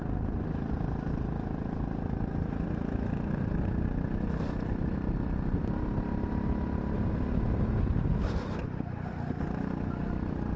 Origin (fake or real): real